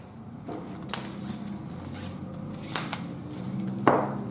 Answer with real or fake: real